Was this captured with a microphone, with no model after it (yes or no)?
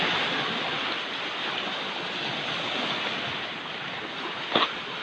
yes